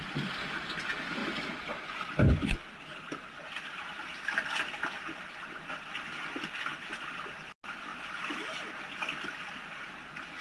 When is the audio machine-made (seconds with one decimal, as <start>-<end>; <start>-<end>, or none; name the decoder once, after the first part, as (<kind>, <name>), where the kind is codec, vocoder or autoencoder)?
6.7-7.3 (vocoder, BigVGAN v2); 7.9-8.7